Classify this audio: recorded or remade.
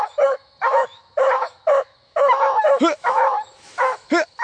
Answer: remade